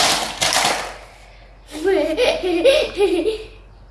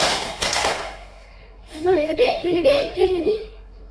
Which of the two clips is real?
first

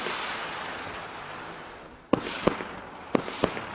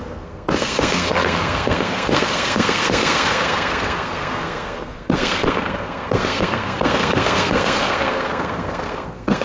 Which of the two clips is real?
first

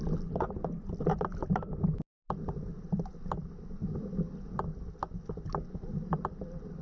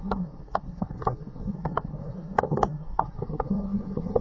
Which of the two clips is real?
first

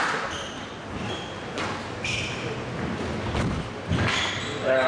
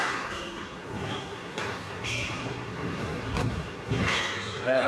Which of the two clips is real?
first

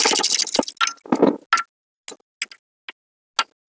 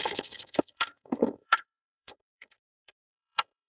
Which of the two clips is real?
first